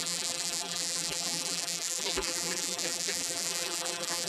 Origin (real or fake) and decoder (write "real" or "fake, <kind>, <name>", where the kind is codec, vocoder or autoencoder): fake, vocoder, BigVGAN v2